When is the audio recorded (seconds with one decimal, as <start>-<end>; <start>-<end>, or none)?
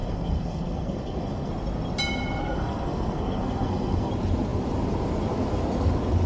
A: 1.5-2.4; 4.1-6.3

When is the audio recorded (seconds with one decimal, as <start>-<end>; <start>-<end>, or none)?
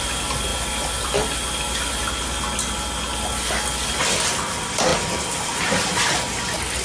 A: 0.0-6.8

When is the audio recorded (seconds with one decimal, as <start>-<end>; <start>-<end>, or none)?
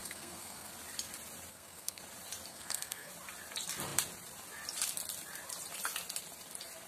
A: 0.7-1.5; 2.0-2.5; 3.1-6.9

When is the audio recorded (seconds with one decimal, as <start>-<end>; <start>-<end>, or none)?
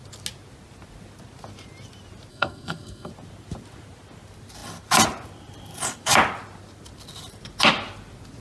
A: 0.0-2.3; 3.1-8.4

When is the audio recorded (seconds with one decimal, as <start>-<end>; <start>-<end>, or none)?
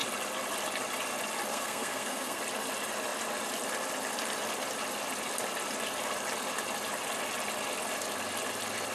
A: 0.0-1.5; 2.4-8.9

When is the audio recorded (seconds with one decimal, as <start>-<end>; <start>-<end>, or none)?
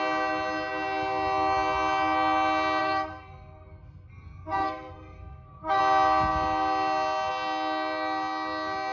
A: 0.0-2.8; 5.8-8.9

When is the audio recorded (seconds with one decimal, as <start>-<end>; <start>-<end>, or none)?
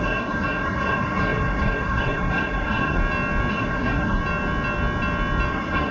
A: 3.0-3.5; 4.2-5.5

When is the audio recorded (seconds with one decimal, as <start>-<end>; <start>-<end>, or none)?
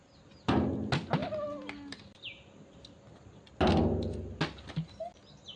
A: 0.0-5.6